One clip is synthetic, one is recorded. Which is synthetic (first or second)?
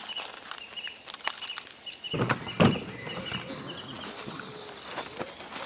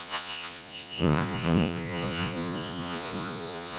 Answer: second